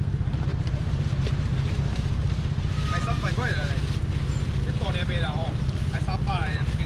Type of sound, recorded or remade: remade